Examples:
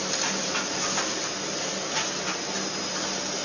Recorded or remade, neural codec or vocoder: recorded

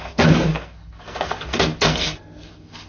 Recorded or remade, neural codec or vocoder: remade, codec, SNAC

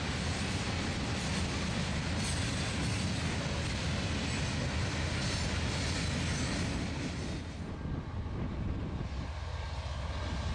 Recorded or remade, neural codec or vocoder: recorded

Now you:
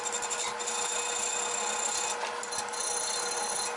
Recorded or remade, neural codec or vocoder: recorded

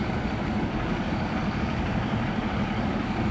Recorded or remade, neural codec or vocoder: remade, codec, DAC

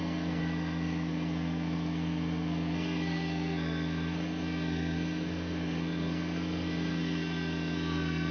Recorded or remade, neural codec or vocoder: remade, codec, SNAC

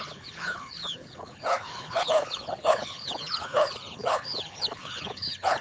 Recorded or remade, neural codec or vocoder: remade, codec, HILCodec